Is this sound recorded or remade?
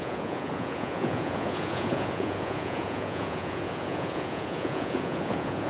remade